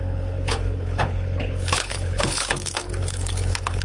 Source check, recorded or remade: remade